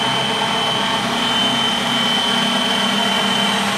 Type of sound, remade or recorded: recorded